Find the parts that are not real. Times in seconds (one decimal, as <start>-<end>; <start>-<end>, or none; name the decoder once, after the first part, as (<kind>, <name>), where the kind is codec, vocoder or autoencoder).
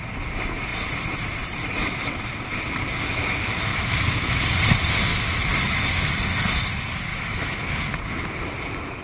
3.7-4.4 (autoencoder, DAC-VAE); 5.1-6.1; 7.1-7.7